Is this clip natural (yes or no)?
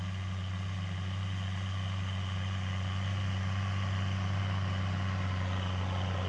yes